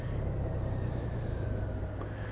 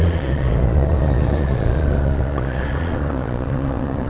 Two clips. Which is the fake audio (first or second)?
second